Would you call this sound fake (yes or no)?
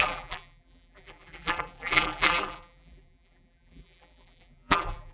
yes